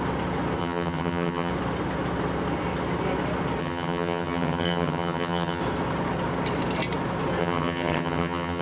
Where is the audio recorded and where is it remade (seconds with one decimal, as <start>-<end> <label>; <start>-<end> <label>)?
0.0-0.6 recorded; 0.6-1.5 remade; 1.5-3.6 recorded; 3.6-5.6 remade; 5.6-7.4 recorded; 7.4-8.6 remade